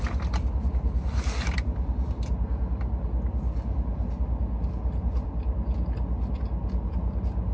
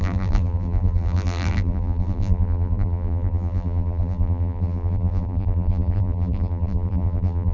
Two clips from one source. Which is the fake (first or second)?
second